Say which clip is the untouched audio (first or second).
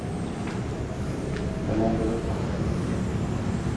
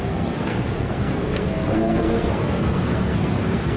first